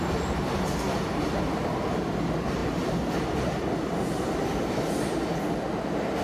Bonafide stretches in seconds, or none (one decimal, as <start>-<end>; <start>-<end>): 0.0-6.2